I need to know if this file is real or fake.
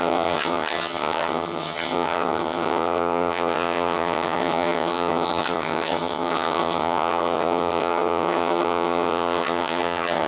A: fake